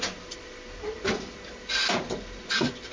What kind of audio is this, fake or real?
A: real